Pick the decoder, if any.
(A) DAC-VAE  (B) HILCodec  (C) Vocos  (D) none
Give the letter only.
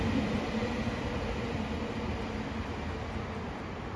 D